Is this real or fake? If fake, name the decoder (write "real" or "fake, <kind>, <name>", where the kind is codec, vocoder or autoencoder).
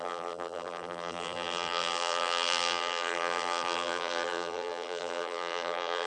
fake, vocoder, BigVGAN v2